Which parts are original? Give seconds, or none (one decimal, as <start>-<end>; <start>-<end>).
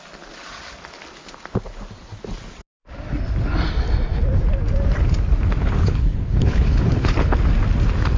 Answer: 0.0-5.6; 7.4-8.2